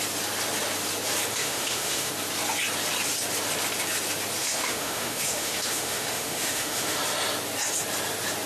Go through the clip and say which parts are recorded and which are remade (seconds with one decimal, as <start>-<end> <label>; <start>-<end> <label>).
0.0-1.3 recorded; 1.3-2.1 remade; 2.1-4.4 recorded; 4.4-7.0 remade; 7.0-8.5 recorded